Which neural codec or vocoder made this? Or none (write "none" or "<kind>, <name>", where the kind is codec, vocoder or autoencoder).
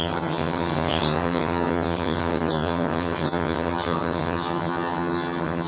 vocoder, HiFi-GAN